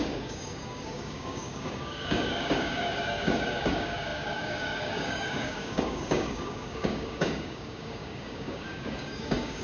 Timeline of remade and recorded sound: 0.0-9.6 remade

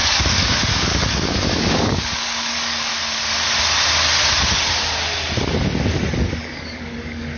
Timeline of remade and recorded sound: 0.0-2.9 remade; 2.9-6.4 recorded; 6.4-7.4 remade

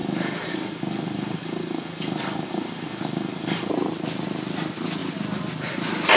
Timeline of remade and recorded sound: 0.0-3.7 remade; 3.7-6.2 recorded